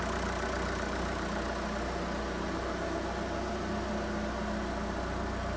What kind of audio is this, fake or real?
real